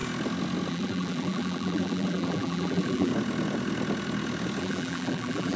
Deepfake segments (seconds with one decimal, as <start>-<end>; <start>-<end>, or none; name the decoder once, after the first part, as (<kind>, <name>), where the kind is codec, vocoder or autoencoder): 0.7-3.1 (vocoder, BigVGAN v2); 4.6-5.6